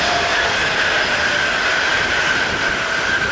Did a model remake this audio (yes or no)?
no